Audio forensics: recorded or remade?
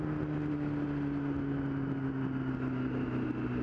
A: recorded